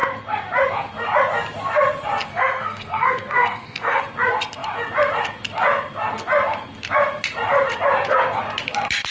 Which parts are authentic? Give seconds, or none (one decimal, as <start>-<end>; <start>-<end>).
0.0-2.3; 4.0-9.1